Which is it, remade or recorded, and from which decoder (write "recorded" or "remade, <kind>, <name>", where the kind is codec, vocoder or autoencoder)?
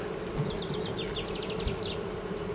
recorded